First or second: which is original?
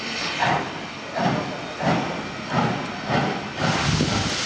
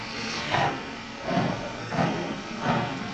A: first